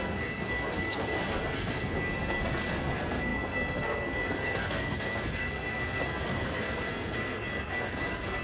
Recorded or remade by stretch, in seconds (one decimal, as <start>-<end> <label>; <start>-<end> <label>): 0.0-8.4 remade